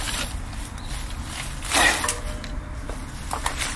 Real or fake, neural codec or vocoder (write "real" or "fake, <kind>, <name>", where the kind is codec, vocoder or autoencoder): real